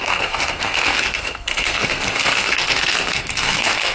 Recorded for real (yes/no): no